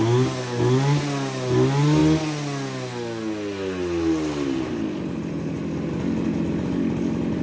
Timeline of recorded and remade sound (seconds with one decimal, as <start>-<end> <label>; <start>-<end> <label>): 0.0-7.4 recorded